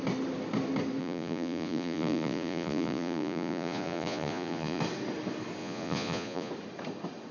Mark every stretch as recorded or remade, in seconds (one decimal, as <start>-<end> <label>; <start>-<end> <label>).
0.0-1.0 recorded; 1.0-4.8 remade; 4.8-5.6 recorded; 5.6-6.5 remade; 6.5-7.3 recorded